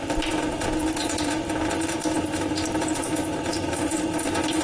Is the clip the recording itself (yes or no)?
no